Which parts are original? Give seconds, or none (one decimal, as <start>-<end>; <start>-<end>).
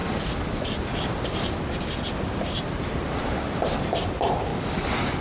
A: 0.0-2.1; 4.5-5.2